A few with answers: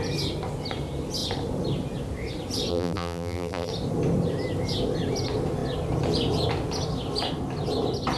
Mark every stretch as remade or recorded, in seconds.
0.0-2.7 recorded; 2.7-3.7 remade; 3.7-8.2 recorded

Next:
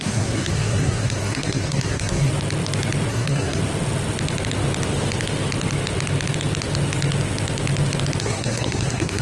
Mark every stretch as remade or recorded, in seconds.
0.0-2.3 remade; 2.3-3.1 recorded; 3.1-3.6 remade; 3.6-8.2 recorded; 8.2-9.2 remade

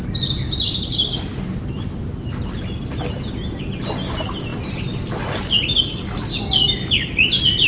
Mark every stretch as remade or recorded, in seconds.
0.0-7.7 recorded

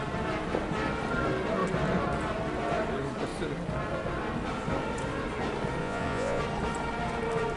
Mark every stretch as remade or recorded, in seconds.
0.0-5.8 recorded; 5.8-6.4 remade; 6.4-7.6 recorded

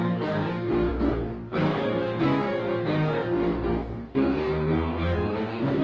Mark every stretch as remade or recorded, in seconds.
0.0-5.8 remade

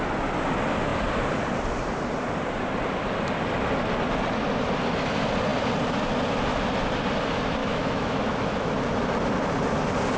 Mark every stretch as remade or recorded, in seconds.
0.0-7.6 recorded; 7.6-8.7 remade; 8.7-10.2 recorded

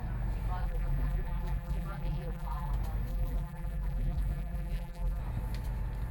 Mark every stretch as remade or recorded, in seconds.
0.0-0.6 recorded; 0.6-2.7 remade; 2.7-3.1 recorded; 3.1-5.2 remade; 5.2-6.1 recorded

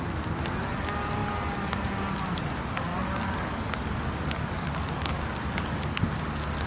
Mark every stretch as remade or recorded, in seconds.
0.0-2.9 recorded; 2.9-6.2 remade; 6.2-6.7 recorded